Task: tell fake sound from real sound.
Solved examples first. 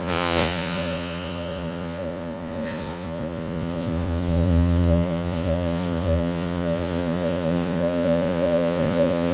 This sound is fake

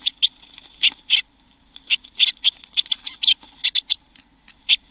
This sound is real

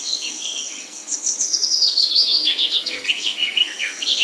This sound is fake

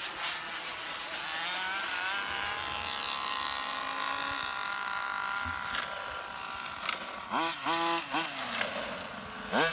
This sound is real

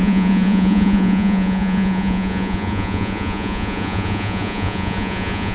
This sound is fake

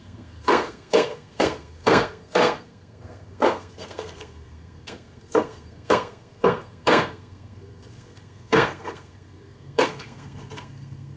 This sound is fake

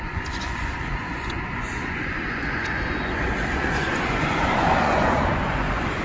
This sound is fake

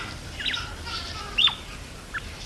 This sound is real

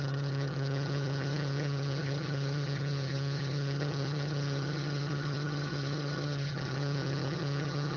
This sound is fake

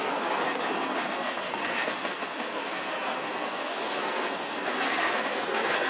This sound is fake